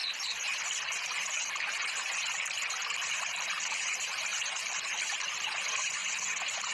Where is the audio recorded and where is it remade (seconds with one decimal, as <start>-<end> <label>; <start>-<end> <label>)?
0.0-3.1 recorded; 3.1-6.0 remade; 6.0-6.7 recorded